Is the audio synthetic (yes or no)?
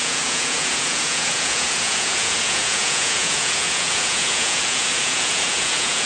yes